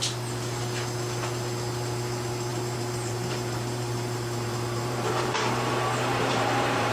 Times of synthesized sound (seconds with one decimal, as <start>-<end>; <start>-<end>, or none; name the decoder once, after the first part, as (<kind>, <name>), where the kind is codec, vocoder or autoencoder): 2.5-6.9 (vocoder, BigVGAN v2)